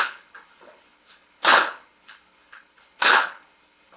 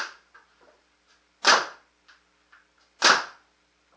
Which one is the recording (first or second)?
second